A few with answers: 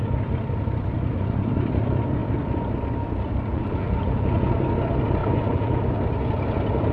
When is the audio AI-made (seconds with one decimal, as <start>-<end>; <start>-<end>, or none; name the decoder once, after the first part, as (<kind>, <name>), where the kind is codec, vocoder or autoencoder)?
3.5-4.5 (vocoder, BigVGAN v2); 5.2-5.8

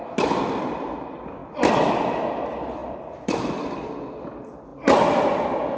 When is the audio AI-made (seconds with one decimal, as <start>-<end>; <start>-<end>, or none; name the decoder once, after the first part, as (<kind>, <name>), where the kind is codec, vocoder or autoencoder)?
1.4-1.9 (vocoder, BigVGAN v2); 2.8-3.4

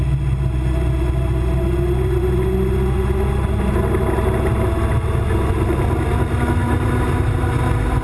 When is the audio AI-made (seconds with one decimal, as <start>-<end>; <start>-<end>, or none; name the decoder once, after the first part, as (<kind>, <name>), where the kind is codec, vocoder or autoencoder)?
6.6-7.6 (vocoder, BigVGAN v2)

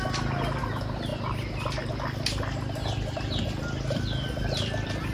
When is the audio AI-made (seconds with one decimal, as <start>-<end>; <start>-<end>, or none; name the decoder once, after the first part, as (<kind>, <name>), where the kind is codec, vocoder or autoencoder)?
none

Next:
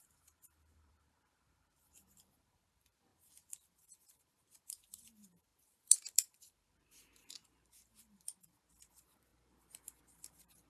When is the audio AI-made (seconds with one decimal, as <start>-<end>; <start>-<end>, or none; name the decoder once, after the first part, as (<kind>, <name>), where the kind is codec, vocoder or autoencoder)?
0.0-10.7 (vocoder, BigVGAN v2)